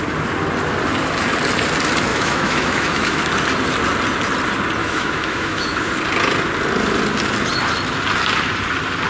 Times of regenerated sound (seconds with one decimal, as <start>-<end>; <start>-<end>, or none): 2.1-3.2; 4.8-5.9